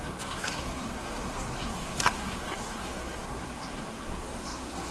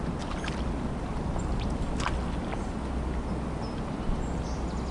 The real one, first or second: second